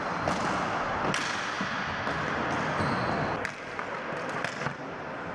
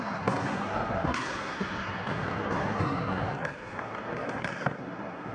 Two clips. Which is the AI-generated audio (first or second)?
second